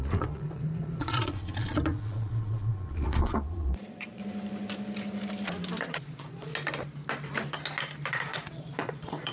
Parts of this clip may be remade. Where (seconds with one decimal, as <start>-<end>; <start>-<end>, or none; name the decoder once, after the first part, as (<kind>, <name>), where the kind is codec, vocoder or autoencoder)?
0.0-4.2 (vocoder, Vocos); 5.8-6.5; 8.1-9.3